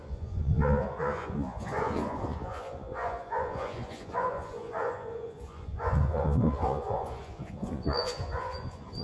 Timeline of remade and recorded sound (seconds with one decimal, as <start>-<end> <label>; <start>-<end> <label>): 0.0-9.0 remade